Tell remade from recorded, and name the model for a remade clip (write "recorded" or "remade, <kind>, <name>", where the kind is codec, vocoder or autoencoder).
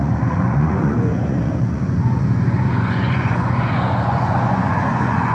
remade, vocoder, Vocos